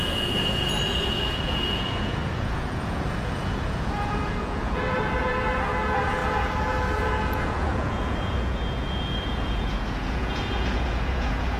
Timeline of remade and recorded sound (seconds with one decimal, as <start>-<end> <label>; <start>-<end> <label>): 0.0-11.6 remade